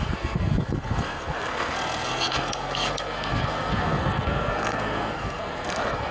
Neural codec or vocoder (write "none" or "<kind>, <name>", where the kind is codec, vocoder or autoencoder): codec, SNAC